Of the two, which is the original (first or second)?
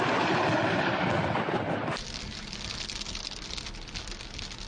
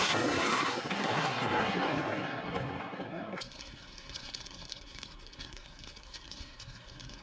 first